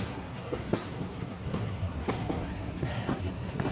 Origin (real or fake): fake